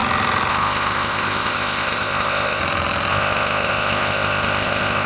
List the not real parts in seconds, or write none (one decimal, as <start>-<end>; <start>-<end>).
0.5-2.6; 3.1-5.1